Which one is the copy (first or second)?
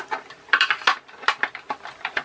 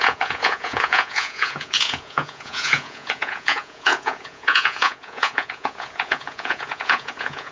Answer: second